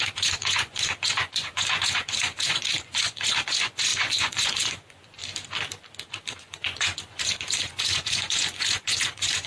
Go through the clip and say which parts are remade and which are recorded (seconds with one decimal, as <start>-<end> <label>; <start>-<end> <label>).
0.0-5.2 remade; 5.2-6.4 recorded; 6.4-9.5 remade